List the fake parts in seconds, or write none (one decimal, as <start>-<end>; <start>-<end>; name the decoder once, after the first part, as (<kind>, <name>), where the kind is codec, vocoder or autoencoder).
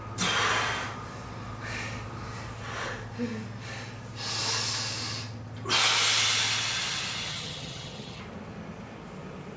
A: 7.3-8.2 (vocoder, HiFi-GAN)